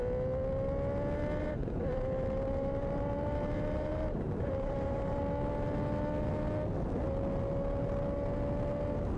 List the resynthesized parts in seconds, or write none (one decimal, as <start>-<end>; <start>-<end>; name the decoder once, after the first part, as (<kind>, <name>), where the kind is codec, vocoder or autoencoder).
1.4-5.2 (vocoder, BigVGAN v2)